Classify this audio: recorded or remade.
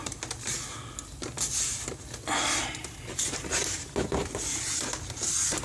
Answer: recorded